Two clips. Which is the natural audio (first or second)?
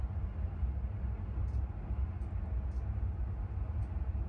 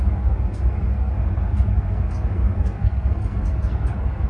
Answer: first